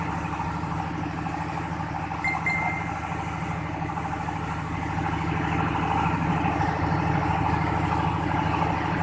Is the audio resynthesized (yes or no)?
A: no